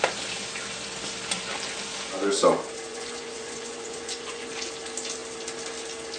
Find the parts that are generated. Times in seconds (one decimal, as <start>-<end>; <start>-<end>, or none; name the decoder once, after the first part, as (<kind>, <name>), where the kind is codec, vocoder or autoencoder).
2.9-4.5 (vocoder, Vocos)